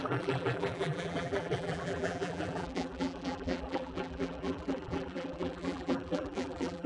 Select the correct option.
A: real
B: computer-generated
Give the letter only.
B